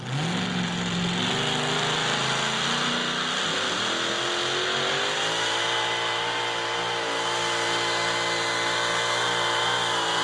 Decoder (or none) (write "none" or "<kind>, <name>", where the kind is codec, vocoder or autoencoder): none